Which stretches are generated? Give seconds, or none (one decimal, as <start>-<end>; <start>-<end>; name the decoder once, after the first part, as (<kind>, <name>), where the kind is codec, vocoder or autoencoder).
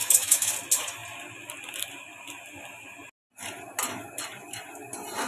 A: 0.0-0.5 (autoencoder, DAC-VAE)